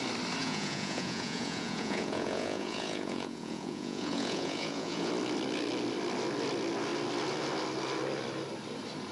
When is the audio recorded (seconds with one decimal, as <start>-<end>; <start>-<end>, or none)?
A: 0.0-0.4; 5.1-9.1